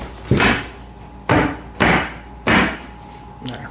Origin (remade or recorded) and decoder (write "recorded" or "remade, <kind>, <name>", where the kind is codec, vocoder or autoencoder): recorded